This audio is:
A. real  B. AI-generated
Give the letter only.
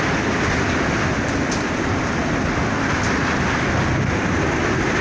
A